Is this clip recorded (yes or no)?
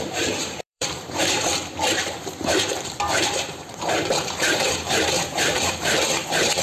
no